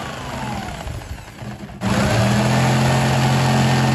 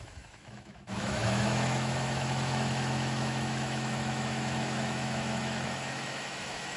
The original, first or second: first